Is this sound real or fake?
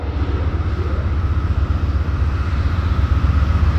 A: real